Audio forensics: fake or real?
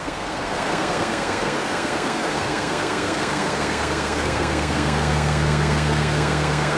fake